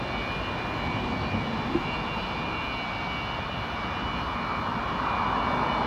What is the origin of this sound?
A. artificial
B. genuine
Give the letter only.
B